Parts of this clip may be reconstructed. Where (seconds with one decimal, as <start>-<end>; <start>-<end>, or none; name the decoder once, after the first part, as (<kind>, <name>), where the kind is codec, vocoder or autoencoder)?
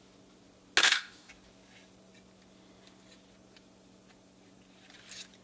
0.8-1.3 (codec, DAC)